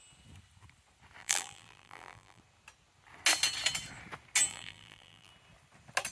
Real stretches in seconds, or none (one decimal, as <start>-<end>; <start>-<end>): 0.0-1.2; 2.4-4.5; 5.3-6.1